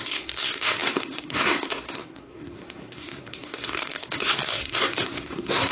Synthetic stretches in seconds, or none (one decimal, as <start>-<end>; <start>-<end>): 0.0-5.7

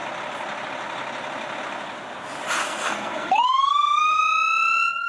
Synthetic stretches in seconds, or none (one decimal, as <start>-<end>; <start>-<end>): 2.6-4.2

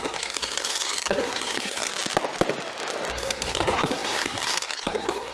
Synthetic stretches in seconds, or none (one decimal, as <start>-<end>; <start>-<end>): 0.0-1.9; 3.1-5.3